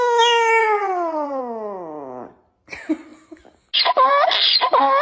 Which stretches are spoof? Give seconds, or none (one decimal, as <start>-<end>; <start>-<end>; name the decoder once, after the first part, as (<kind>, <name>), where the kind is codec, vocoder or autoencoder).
0.6-1.4 (vocoder, WaveNeXt)